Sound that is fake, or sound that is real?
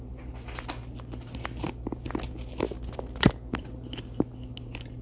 real